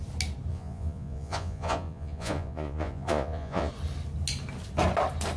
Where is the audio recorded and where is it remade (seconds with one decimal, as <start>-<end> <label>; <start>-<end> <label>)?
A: 0.0-0.5 recorded; 0.5-3.7 remade; 3.7-5.4 recorded